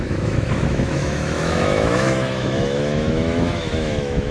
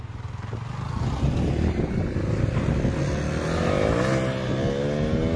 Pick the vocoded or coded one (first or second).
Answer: first